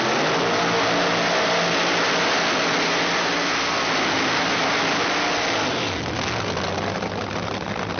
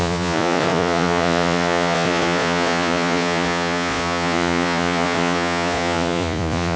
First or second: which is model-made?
second